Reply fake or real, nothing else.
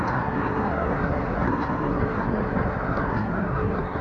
fake